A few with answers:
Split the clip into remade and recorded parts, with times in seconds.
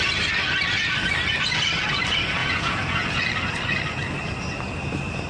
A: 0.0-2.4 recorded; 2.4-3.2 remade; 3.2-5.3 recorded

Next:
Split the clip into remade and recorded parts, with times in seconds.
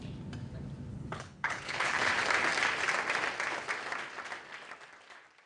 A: 0.0-0.9 recorded; 0.9-2.1 remade; 2.1-5.5 recorded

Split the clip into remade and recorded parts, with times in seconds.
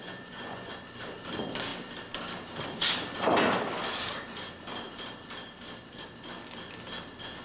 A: 0.0-0.7 remade; 0.7-7.4 recorded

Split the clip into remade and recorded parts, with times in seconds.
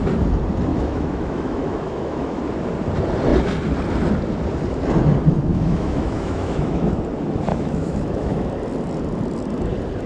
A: 0.0-0.7 recorded; 0.7-2.4 remade; 2.4-5.5 recorded; 5.5-7.0 remade; 7.0-7.5 recorded; 7.5-8.5 remade; 8.5-10.1 recorded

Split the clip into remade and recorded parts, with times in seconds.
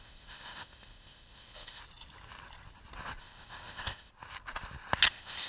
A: 0.0-1.8 remade; 1.8-3.2 recorded; 3.2-4.1 remade; 4.1-5.1 recorded; 5.1-5.5 remade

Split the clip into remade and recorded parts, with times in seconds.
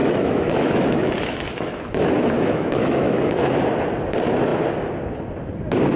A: 0.0-3.6 remade; 3.6-6.0 recorded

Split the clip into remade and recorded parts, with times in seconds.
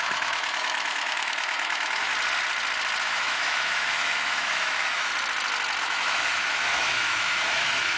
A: 0.0-2.1 remade; 2.1-3.0 recorded; 3.0-5.1 remade; 5.1-5.8 recorded; 5.8-8.0 remade